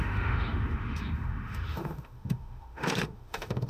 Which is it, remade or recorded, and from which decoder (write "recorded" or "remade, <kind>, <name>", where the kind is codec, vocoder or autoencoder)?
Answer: remade, autoencoder, DAC-VAE